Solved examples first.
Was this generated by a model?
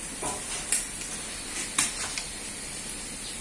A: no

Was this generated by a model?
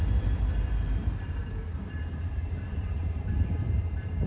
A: yes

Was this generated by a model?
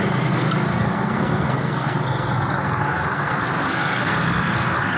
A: yes